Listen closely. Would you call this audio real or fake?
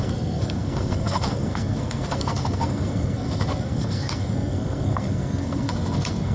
fake